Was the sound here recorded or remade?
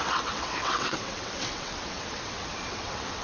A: remade